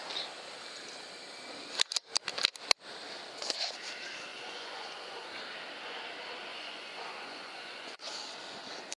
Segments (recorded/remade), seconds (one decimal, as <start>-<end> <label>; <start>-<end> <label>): 0.0-4.3 recorded; 4.3-5.4 remade; 5.4-6.5 recorded; 6.5-8.1 remade; 8.1-9.0 recorded

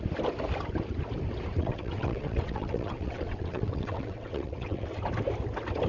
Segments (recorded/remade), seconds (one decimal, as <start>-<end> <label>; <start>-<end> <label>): 0.0-1.5 recorded; 1.5-5.0 remade; 5.0-5.9 recorded

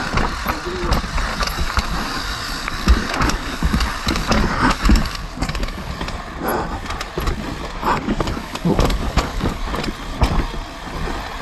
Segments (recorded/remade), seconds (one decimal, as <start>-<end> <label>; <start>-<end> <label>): 0.0-1.3 recorded; 1.3-5.9 remade; 5.9-7.8 recorded; 7.8-9.6 remade; 9.6-11.4 recorded

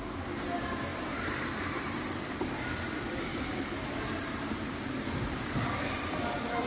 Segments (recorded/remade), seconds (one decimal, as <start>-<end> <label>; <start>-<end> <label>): 0.0-0.9 recorded; 0.9-2.4 remade; 2.4-3.3 recorded; 3.3-5.8 remade; 5.8-6.7 recorded

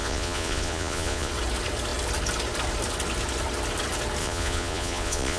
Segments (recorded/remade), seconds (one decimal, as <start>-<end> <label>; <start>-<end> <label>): 0.0-1.3 remade; 1.3-4.2 recorded; 4.2-5.4 remade

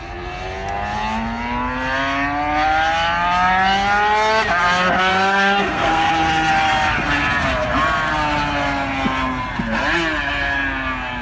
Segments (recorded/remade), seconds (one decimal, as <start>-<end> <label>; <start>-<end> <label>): 0.0-5.1 recorded; 5.1-6.1 remade; 6.1-11.2 recorded